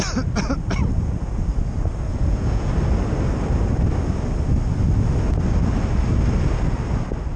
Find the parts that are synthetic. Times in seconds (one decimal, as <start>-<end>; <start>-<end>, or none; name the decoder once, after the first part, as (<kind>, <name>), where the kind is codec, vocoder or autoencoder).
2.1-2.7 (vocoder, Vocos)